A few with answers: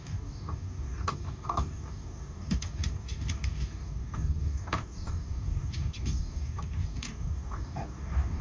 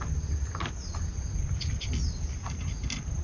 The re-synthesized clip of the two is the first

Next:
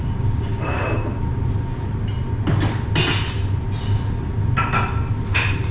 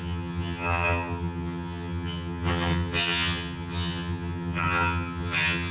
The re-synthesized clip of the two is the second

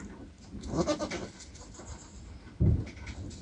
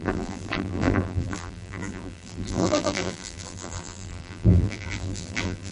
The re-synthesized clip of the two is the second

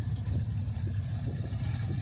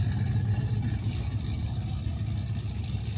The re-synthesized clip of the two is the first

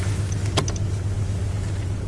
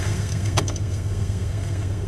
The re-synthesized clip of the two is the second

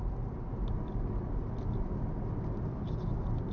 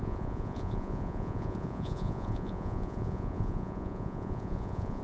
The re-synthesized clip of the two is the second